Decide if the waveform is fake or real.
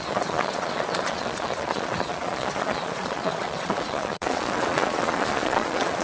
fake